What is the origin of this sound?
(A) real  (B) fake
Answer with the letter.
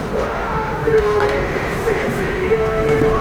B